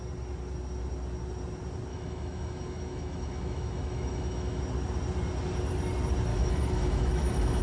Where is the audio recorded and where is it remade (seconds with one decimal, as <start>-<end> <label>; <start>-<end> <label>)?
0.0-1.9 recorded; 1.9-4.6 remade; 4.6-6.3 recorded; 6.3-7.6 remade